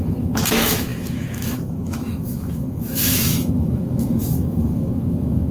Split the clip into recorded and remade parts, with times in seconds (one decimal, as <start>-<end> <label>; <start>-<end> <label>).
0.0-5.5 remade